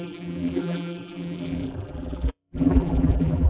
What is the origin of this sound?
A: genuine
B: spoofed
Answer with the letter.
B